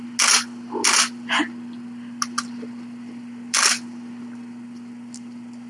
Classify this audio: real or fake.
real